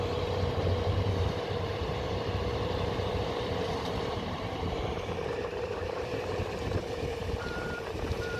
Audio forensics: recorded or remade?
remade